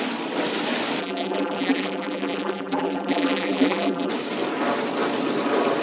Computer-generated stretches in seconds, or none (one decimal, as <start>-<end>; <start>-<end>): 1.0-4.1